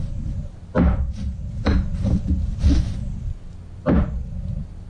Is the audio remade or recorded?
recorded